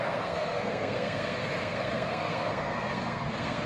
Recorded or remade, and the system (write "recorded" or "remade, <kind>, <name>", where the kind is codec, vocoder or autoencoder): remade, codec, SNAC